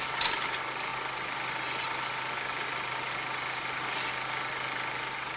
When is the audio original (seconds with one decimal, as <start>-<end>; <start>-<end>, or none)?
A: 0.0-5.4